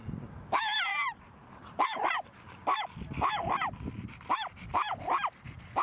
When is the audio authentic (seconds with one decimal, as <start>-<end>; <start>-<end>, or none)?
0.0-0.9; 2.1-5.8